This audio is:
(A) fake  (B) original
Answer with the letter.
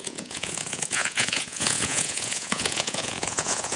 A